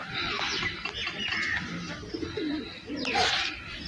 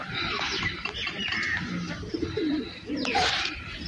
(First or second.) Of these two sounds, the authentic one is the first